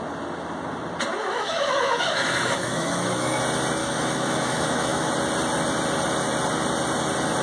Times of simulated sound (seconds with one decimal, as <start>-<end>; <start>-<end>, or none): 1.2-3.4; 3.8-5.1